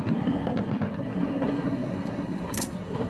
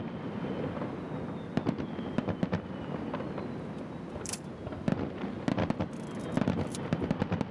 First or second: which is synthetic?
first